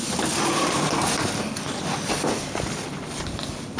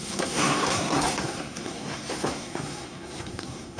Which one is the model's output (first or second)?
second